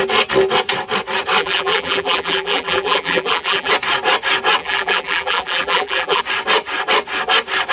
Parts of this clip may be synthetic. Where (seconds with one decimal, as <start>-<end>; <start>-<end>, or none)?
1.4-3.7; 4.6-6.2